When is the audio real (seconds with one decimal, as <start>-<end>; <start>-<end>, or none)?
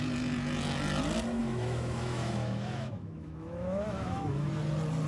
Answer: 0.0-1.4; 4.5-5.1